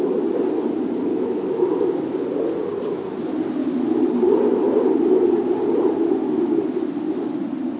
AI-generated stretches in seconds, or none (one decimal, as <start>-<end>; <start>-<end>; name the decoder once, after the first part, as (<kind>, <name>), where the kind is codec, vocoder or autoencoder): 1.1-2.2 (autoencoder, DAC-VAE)